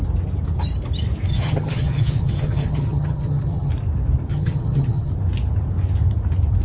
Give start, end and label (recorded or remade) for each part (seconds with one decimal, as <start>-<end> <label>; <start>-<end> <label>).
0.0-1.3 recorded; 1.3-3.7 remade; 3.7-4.3 recorded; 4.3-5.1 remade; 5.1-6.6 recorded